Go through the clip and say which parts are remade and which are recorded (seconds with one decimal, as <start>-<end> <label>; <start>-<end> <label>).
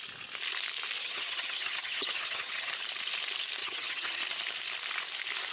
0.0-1.0 recorded; 1.0-2.7 remade; 2.7-3.6 recorded; 3.6-4.2 remade; 4.2-5.5 recorded